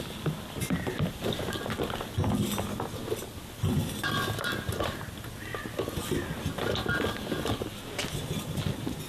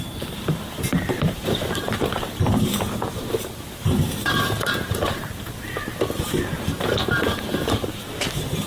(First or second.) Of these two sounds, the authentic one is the first